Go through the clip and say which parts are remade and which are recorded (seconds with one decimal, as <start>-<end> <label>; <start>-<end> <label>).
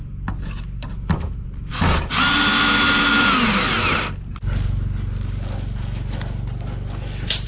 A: 0.0-7.5 recorded